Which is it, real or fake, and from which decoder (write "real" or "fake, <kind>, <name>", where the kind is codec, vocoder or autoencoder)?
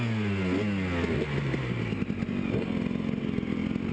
real